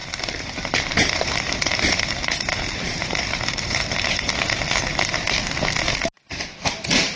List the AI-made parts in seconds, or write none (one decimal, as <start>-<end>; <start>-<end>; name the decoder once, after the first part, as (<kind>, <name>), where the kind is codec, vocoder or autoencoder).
0.0-4.3 (vocoder, BigVGAN v2)